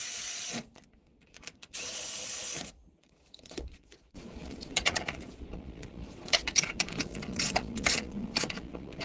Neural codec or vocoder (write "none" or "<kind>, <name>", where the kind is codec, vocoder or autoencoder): vocoder, Vocos